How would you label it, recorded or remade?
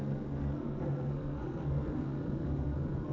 remade